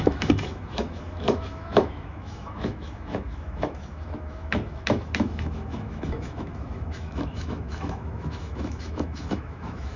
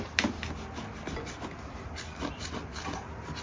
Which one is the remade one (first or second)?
first